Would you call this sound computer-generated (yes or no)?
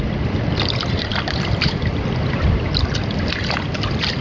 yes